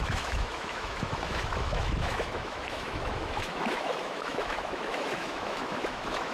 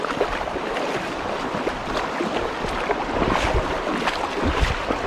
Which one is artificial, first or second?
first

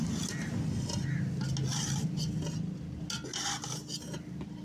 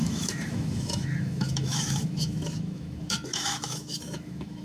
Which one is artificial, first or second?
second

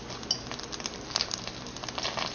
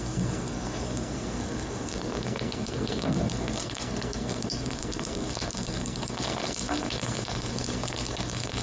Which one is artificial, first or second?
second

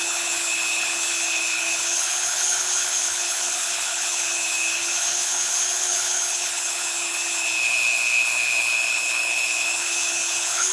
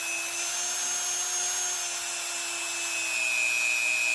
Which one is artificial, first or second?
first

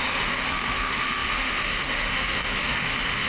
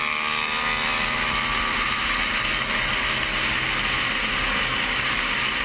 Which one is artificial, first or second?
first